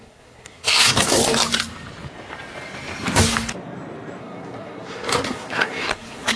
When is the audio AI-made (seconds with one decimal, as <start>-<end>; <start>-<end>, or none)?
0.0-1.2; 4.2-6.4